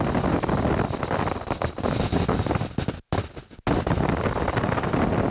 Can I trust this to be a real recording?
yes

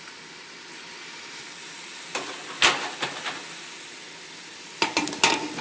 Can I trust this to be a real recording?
yes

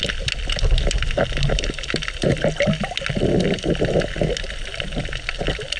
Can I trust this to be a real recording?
yes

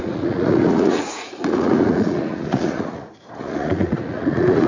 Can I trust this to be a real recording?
no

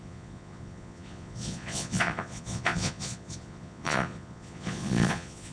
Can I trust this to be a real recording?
no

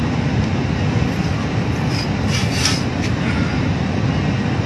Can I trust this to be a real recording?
yes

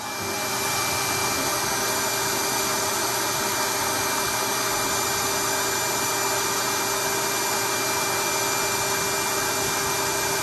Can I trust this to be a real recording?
yes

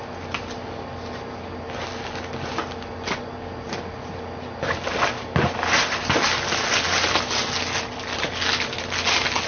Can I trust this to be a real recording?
yes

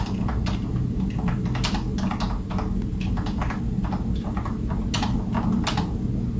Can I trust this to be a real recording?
yes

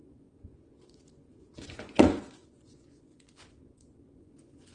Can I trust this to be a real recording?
no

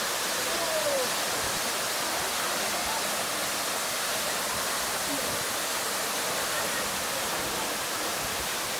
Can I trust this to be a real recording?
yes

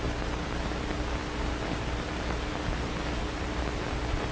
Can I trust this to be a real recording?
yes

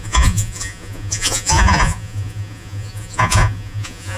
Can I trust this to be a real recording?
no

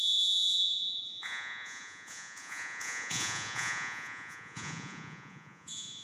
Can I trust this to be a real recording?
no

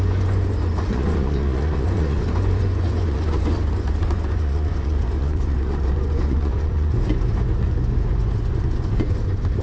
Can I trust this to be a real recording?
no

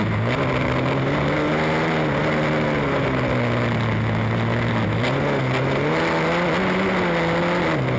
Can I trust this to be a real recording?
yes